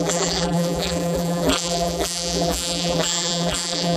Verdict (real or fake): fake